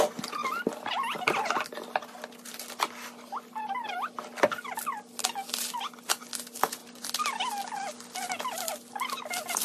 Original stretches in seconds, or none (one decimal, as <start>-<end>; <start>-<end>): 0.0-9.6